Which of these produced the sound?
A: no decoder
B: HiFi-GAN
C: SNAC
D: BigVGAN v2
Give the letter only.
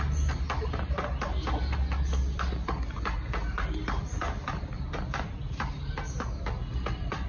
A